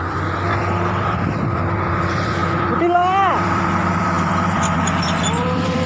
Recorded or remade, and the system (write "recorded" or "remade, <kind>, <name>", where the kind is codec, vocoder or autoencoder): remade, vocoder, BigVGAN v2